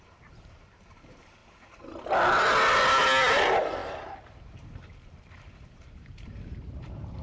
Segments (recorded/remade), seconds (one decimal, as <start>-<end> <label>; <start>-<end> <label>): 0.0-1.4 remade; 1.4-3.3 recorded; 3.3-7.2 remade